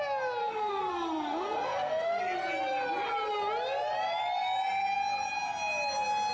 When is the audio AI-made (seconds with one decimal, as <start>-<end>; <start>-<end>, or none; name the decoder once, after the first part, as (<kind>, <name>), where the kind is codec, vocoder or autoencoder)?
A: 0.4-2.2 (codec, SNAC)